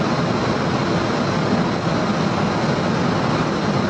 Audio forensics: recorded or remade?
recorded